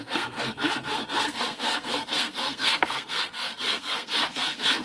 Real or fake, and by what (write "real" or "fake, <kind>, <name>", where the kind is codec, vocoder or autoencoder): fake, codec, SNAC